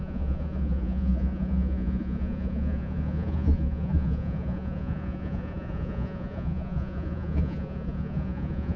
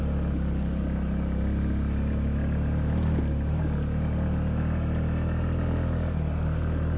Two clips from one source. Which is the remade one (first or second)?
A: first